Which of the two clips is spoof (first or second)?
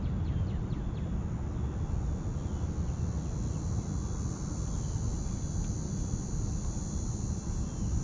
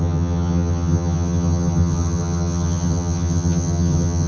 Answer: second